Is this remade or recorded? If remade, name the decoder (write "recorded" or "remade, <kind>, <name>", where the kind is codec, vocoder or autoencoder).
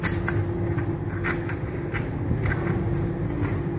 recorded